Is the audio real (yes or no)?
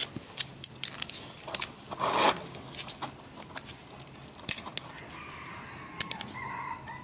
yes